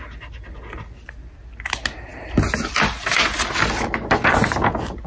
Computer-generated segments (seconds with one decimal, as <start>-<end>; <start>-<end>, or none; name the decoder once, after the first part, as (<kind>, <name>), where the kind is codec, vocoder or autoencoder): none